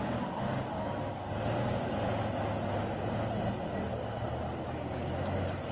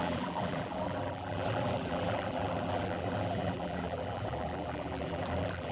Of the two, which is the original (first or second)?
first